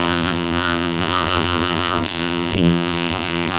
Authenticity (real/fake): fake